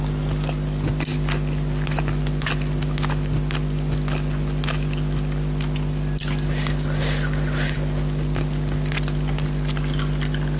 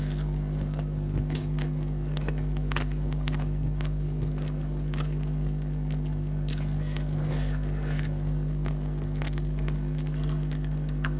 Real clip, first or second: first